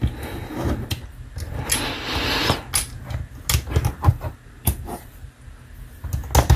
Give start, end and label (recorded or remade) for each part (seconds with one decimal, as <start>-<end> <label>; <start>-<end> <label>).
0.0-4.1 recorded; 4.1-5.5 remade; 5.5-6.6 recorded